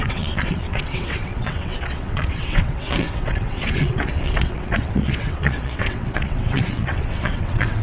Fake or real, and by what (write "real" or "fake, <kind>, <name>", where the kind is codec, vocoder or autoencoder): fake, vocoder, WaveNeXt